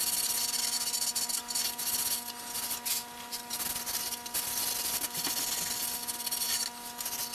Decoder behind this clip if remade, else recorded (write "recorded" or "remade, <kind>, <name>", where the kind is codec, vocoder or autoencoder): recorded